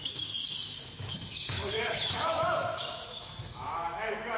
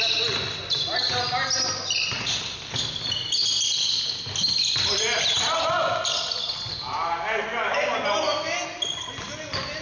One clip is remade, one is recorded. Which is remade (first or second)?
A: first